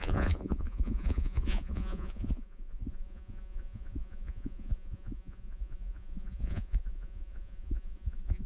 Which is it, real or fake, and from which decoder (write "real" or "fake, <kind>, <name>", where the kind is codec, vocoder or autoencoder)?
fake, vocoder, Vocos